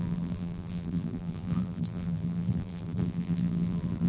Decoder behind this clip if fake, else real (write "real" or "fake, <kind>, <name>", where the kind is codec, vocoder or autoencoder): fake, vocoder, BigVGAN v2